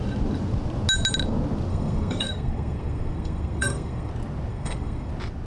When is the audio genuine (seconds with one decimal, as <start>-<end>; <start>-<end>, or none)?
0.0-1.7; 4.1-4.5; 5.1-5.5